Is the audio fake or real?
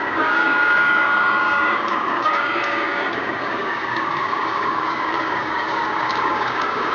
fake